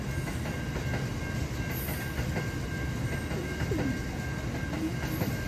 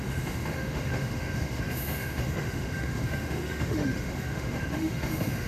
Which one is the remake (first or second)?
second